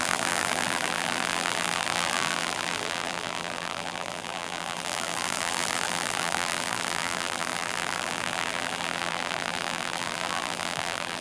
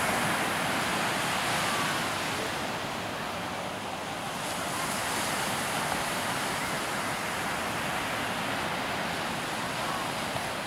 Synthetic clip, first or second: first